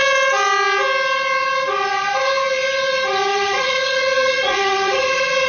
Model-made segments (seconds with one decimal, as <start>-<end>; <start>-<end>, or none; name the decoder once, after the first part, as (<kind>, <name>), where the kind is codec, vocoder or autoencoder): 3.3-5.5 (vocoder, Vocos)